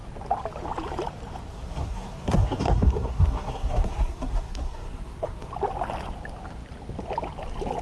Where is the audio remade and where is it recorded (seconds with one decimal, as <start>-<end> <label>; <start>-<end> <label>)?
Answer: 0.0-1.5 recorded; 1.5-5.5 remade; 5.5-7.8 recorded